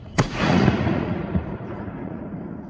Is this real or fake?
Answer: fake